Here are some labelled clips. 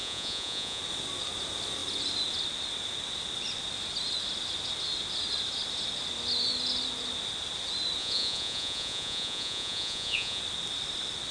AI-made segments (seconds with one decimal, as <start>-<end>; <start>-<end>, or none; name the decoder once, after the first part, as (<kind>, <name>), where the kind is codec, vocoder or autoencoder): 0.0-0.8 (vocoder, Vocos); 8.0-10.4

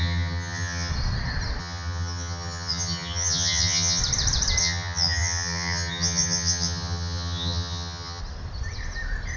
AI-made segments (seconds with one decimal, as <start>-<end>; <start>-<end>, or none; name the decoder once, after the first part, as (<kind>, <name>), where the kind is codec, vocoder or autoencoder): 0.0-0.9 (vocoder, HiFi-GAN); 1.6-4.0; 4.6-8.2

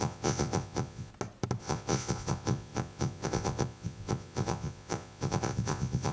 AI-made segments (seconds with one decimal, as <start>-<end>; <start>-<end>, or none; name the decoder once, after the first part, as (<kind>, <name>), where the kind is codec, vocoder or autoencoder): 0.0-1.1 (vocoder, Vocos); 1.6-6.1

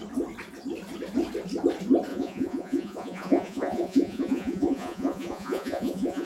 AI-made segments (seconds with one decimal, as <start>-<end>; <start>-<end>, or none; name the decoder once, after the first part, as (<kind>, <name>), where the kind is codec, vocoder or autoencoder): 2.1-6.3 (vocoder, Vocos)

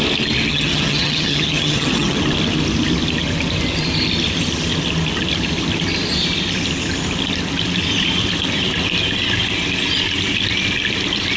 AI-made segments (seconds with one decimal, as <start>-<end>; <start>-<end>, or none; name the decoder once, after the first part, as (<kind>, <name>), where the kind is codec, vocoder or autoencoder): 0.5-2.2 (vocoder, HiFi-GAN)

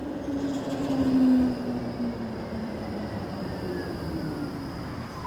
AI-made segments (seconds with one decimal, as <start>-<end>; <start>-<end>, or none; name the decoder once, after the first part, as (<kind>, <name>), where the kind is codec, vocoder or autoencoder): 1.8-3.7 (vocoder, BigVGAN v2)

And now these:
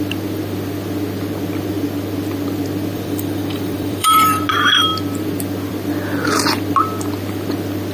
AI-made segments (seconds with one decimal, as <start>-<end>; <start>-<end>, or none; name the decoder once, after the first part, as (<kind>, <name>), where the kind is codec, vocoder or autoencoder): 2.9-4.4 (vocoder, BigVGAN v2)

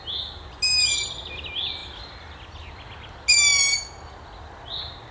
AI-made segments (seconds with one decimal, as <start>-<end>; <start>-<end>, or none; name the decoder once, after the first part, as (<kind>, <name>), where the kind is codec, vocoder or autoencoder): none